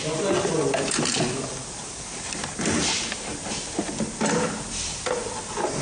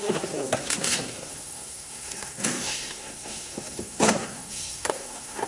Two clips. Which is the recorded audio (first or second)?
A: first